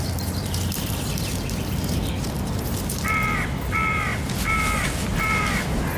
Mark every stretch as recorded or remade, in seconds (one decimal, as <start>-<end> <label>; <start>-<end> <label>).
0.0-4.1 remade; 4.1-5.4 recorded; 5.4-6.0 remade